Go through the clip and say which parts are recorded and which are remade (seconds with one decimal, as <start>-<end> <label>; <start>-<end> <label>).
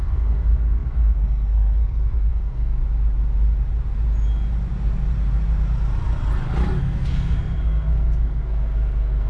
0.0-2.8 remade; 2.8-6.8 recorded; 6.8-9.3 remade